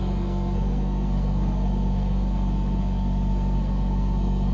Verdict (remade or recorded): remade